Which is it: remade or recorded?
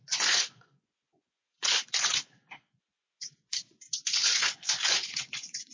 remade